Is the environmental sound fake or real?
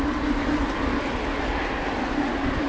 real